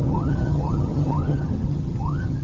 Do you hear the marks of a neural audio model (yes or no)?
yes